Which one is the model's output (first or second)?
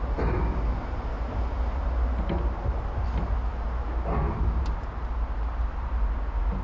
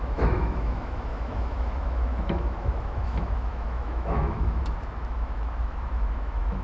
second